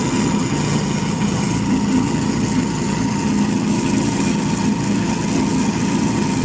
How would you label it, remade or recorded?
remade